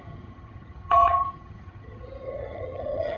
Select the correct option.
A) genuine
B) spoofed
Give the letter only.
B